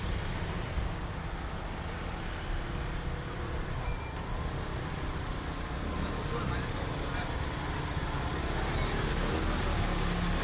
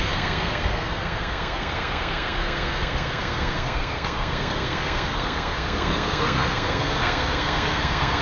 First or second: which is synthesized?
second